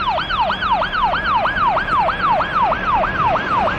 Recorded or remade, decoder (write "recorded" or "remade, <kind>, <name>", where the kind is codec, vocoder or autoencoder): remade, vocoder, BigVGAN v2